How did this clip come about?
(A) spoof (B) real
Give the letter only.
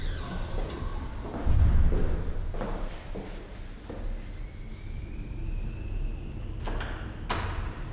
B